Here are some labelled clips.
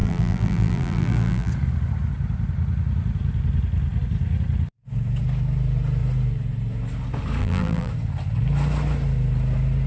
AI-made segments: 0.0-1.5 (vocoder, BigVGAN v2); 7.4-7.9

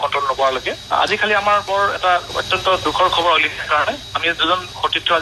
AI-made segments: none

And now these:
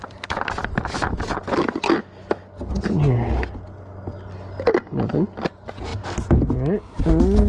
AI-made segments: none